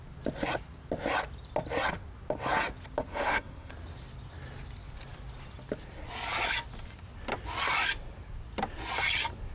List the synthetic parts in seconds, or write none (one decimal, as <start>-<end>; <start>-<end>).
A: 3.1-3.7